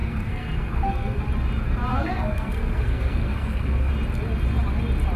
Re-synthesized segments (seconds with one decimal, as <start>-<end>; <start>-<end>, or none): 0.0-1.2; 1.9-3.9